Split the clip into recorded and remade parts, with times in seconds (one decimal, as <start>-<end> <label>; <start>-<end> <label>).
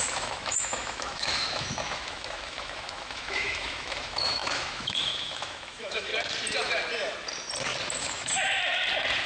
0.0-6.1 remade; 6.1-8.0 recorded; 8.0-8.6 remade; 8.6-9.3 recorded